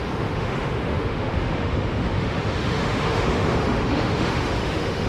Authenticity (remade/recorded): remade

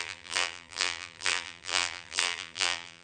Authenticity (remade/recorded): remade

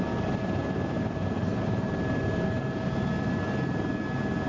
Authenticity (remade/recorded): recorded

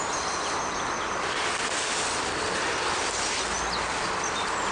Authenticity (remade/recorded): recorded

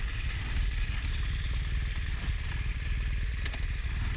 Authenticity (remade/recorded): remade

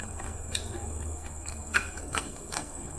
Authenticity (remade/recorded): remade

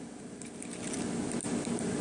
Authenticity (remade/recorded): recorded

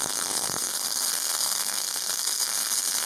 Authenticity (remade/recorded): remade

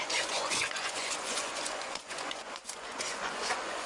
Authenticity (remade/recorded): remade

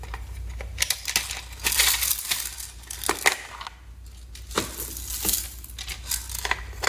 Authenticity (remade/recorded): recorded